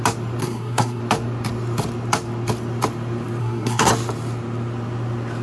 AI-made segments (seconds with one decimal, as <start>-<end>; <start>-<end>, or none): 0.4-1.0; 3.4-3.9